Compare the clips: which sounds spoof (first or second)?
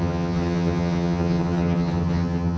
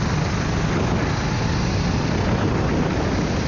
first